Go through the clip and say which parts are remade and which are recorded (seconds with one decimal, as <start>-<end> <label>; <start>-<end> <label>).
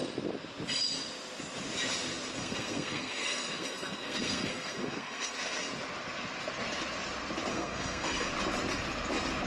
0.0-2.4 recorded; 2.4-5.3 remade; 5.3-7.5 recorded; 7.5-8.3 remade; 8.3-9.5 recorded